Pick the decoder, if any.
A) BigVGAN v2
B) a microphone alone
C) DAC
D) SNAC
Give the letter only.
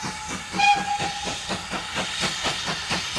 B